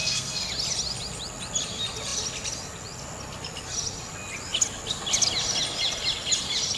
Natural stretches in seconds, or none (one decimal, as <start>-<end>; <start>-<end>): 0.5-6.8